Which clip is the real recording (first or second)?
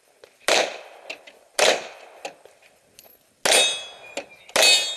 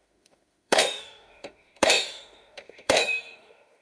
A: first